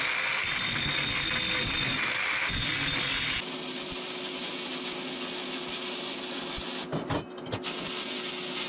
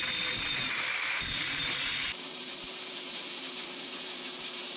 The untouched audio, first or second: first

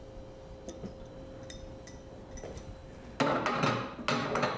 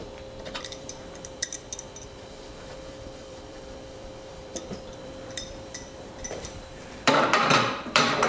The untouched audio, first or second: first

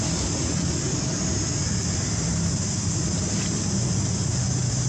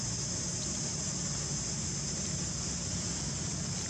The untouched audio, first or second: second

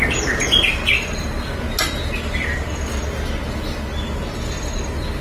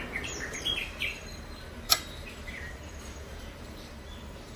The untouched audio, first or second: first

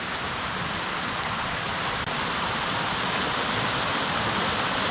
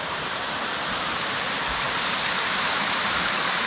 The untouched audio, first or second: first